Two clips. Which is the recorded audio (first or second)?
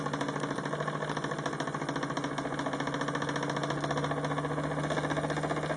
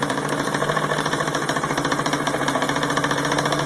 first